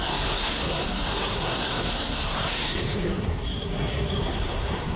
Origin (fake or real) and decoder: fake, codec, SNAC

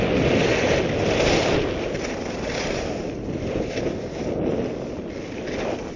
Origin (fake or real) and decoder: real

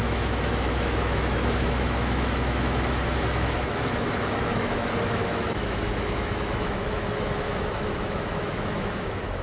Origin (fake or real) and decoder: fake, autoencoder, DAC-VAE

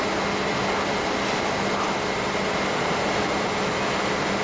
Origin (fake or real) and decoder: real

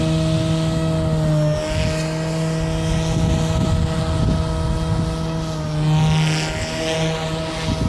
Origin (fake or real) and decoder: real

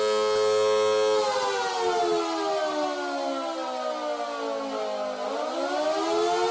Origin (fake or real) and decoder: real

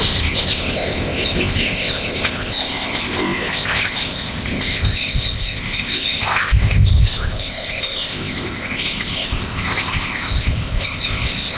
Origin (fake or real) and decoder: fake, codec, ZipCodec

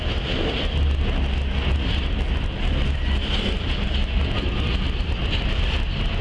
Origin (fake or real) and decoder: real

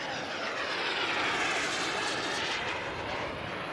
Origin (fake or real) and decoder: real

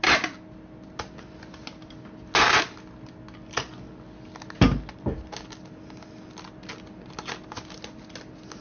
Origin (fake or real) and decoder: real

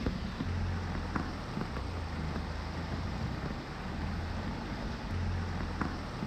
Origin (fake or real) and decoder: real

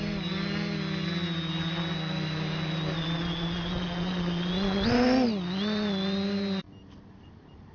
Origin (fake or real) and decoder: real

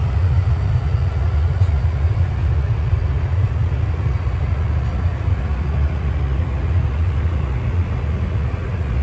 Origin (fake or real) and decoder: fake, vocoder, Vocos